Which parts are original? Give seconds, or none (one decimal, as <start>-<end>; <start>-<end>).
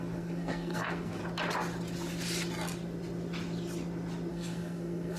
1.2-4.3